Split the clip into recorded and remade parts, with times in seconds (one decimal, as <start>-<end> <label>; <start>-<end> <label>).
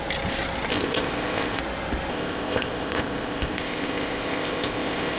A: 0.0-0.7 recorded; 0.7-1.6 remade; 1.6-2.1 recorded; 2.1-5.2 remade